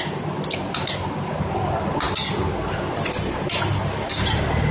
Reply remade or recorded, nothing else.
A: recorded